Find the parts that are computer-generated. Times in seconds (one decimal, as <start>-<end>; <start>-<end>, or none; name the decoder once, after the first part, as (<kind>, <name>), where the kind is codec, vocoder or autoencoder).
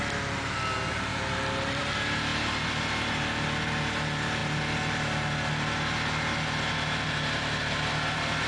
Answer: 1.1-1.8 (vocoder, BigVGAN v2)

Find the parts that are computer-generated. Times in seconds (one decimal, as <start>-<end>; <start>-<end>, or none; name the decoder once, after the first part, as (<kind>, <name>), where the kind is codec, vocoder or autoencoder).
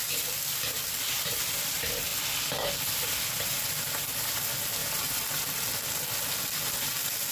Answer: 2.1-3.7 (vocoder, BigVGAN v2); 4.8-5.8